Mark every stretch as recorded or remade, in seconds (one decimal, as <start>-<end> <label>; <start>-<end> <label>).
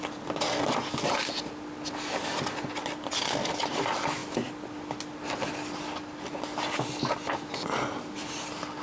0.0-8.8 recorded